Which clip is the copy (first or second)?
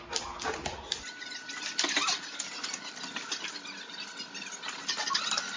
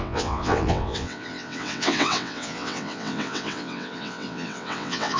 second